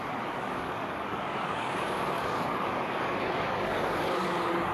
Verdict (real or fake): fake